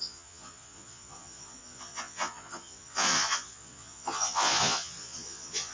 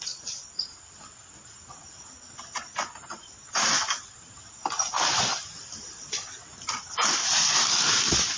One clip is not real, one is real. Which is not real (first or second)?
first